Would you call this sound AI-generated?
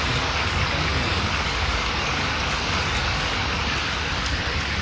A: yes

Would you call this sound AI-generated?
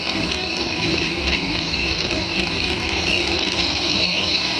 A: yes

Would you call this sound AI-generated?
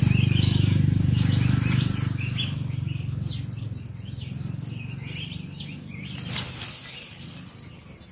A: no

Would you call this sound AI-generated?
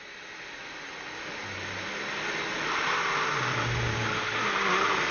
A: no